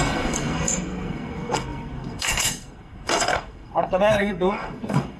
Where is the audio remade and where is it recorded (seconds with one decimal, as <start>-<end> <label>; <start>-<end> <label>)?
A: 0.0-5.2 remade